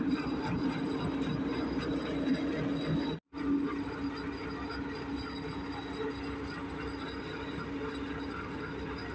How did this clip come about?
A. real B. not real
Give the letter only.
A